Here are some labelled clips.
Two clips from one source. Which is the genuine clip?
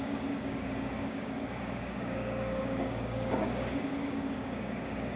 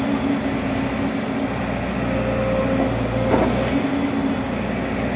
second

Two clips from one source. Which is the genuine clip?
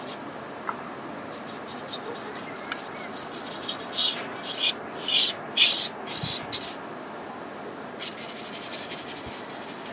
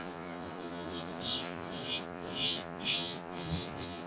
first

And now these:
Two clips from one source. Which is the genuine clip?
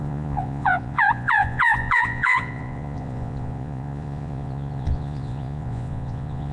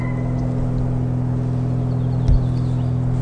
second